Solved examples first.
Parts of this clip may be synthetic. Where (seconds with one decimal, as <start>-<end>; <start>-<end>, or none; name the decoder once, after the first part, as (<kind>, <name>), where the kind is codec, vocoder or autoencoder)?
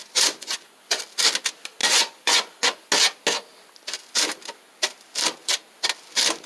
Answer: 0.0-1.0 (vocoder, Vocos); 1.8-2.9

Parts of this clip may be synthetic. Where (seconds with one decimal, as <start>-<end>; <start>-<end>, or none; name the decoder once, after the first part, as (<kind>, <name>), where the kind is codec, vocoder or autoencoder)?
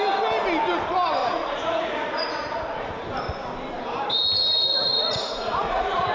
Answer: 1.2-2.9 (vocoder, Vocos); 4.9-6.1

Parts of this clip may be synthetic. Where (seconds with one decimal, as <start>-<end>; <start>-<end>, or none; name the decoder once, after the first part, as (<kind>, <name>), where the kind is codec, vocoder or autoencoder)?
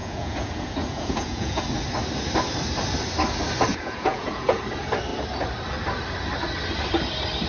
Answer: 0.0-1.6 (vocoder, Vocos); 3.7-4.6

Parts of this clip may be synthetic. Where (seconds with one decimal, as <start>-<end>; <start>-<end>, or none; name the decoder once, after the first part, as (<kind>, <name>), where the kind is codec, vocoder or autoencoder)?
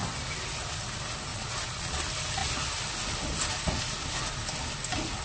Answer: 1.3-2.0 (vocoder, Vocos)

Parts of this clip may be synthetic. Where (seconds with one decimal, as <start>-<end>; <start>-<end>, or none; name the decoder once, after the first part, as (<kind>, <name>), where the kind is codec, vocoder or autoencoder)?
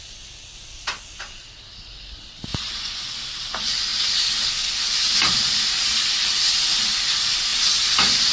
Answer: 2.5-3.1 (vocoder, Vocos)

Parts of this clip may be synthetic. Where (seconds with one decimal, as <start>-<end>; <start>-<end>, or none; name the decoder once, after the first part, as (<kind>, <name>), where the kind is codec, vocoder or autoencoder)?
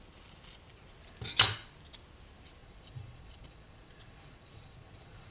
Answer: 2.6-5.3 (vocoder, Vocos)